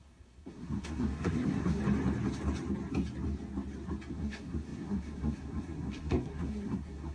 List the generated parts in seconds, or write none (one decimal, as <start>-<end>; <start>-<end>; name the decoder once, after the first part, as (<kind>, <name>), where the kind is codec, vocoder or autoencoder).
0.0-1.8 (codec, SNAC); 4.1-7.1